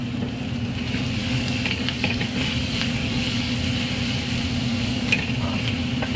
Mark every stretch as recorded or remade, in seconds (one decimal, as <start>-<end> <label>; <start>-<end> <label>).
0.0-1.2 recorded; 1.2-3.6 remade; 3.6-4.7 recorded; 4.7-5.2 remade; 5.2-6.2 recorded